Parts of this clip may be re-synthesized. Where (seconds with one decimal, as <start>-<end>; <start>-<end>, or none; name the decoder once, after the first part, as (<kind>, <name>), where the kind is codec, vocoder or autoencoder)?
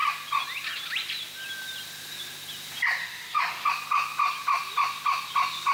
3.0-3.7 (autoencoder, DAC-VAE)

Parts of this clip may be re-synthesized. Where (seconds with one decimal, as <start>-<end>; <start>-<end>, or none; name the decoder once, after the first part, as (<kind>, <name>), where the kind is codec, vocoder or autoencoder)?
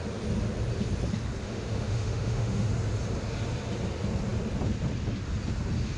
1.4-2.7 (autoencoder, DAC-VAE)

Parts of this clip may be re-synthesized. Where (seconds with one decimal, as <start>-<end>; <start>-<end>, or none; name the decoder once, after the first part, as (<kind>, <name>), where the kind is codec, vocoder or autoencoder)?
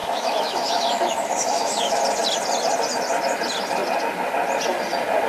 0.0-2.0 (autoencoder, DAC-VAE)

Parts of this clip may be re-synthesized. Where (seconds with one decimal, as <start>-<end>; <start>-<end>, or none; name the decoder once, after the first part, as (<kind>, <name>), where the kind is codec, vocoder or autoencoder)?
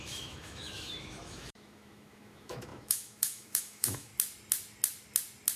0.0-4.1 (autoencoder, DAC-VAE)